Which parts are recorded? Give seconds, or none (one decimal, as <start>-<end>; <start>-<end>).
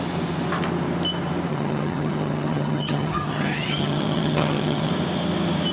0.0-1.5; 4.9-5.7